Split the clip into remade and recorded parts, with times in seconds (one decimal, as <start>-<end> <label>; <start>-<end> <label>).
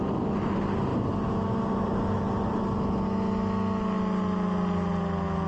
0.0-5.5 recorded